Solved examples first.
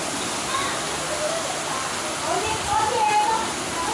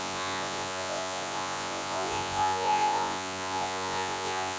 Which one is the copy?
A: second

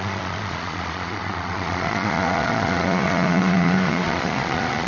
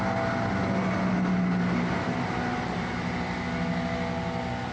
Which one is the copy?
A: first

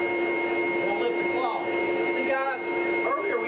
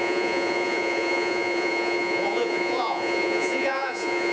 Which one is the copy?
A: second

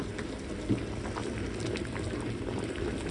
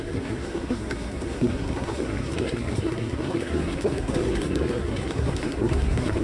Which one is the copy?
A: second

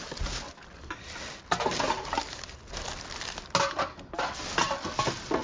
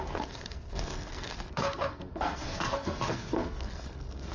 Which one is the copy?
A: second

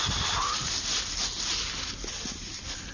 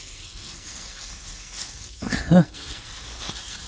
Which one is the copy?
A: second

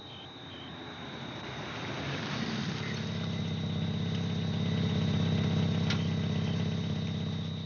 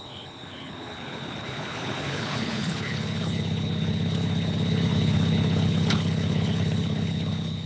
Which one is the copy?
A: second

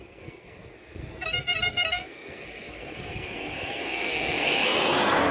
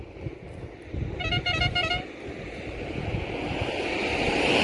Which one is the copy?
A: first